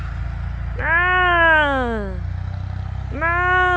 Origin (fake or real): real